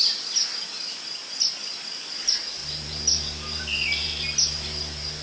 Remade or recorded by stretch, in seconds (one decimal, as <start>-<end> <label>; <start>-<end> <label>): 0.0-5.2 recorded